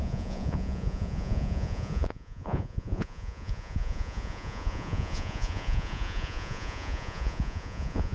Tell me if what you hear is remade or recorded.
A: remade